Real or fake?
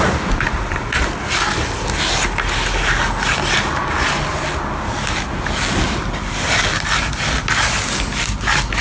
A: real